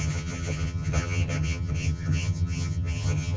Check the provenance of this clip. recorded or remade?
remade